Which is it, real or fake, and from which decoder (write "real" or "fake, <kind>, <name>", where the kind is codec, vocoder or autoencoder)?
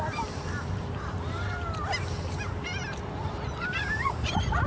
fake, vocoder, BigVGAN v2